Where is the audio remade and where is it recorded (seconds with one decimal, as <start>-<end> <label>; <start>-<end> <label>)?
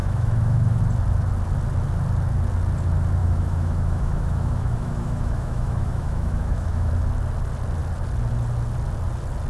0.0-0.8 remade; 0.8-3.2 recorded; 3.2-6.9 remade; 6.9-9.5 recorded